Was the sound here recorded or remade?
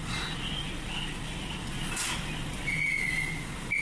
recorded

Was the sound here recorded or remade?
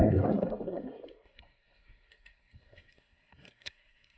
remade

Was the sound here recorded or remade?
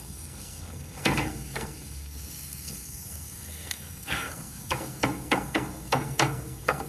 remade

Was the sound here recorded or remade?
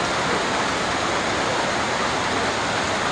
recorded